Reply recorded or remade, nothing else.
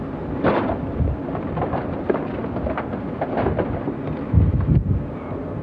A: recorded